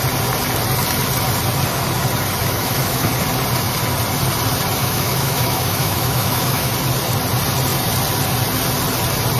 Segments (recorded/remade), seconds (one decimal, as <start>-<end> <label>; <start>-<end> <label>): 0.0-2.4 recorded; 2.4-3.1 remade; 3.1-4.8 recorded; 4.8-6.7 remade; 6.7-9.4 recorded